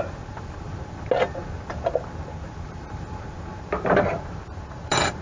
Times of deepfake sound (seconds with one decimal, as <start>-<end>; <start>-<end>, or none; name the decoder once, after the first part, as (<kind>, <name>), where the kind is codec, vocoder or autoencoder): 3.5-5.2 (vocoder, BigVGAN v2)